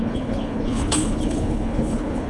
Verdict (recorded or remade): remade